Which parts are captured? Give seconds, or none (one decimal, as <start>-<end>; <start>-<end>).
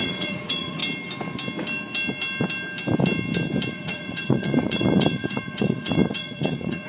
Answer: 0.8-3.7